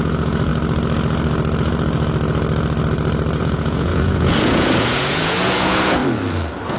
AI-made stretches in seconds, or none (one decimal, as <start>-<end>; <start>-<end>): 0.0-0.5; 3.4-6.0